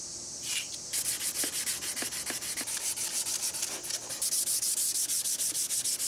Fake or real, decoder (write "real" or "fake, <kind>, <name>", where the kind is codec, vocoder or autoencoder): real